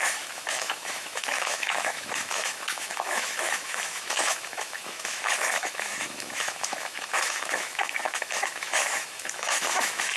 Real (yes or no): no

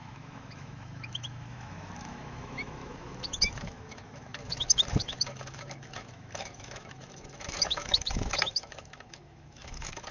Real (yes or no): no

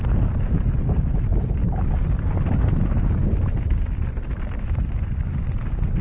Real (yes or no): yes